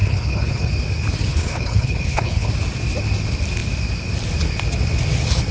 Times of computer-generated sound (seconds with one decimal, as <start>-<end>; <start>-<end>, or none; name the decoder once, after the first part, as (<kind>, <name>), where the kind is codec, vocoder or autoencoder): 0.0-0.7 (codec, HILCodec); 1.3-2.5